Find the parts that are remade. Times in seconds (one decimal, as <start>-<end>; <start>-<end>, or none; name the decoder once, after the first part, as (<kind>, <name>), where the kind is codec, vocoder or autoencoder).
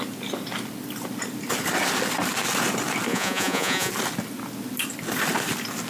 3.1-3.9 (vocoder, Vocos)